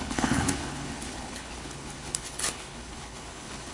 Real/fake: fake